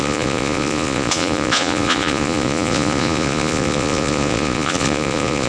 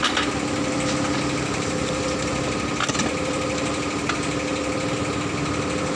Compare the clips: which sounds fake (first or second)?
first